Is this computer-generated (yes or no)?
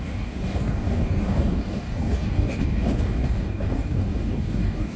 yes